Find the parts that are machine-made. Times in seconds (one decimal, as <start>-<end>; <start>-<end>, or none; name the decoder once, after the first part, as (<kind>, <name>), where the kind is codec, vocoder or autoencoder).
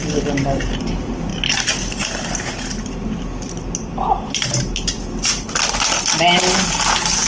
none